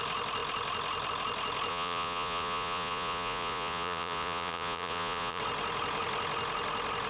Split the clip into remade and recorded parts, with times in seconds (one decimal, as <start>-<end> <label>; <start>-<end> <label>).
0.0-1.7 recorded; 1.7-5.4 remade; 5.4-7.1 recorded